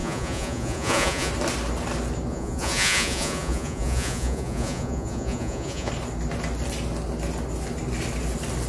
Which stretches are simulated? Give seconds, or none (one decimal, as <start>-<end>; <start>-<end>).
0.0-1.3; 2.3-5.9